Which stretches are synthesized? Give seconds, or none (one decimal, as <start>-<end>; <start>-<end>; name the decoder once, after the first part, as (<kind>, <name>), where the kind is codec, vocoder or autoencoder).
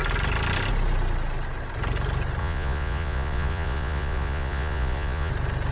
2.4-5.3 (vocoder, Vocos)